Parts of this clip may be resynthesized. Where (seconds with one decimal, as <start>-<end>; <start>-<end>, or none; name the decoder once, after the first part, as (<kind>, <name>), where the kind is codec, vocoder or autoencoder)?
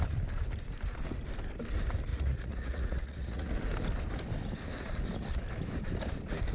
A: 2.1-3.5 (vocoder, Vocos)